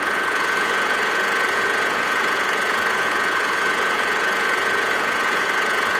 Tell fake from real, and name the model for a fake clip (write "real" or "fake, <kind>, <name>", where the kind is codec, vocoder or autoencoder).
fake, vocoder, Vocos